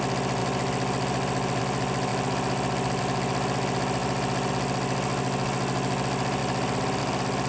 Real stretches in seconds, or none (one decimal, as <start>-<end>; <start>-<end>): 0.0-0.4; 1.6-2.1; 3.0-4.0; 4.5-6.4; 7.0-7.5